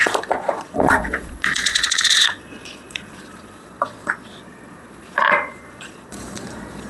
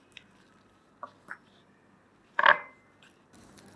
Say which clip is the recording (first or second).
second